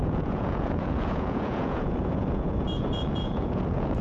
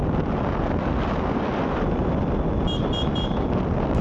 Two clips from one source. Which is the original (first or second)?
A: second